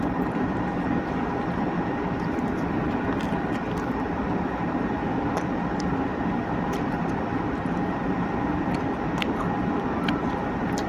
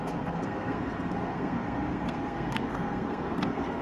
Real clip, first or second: first